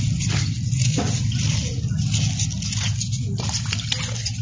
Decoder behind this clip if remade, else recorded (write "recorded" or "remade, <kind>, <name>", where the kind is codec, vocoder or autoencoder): recorded